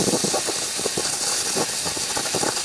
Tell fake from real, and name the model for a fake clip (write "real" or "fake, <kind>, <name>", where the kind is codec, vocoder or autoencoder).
real